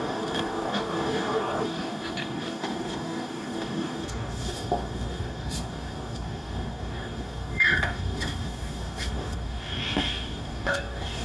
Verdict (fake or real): fake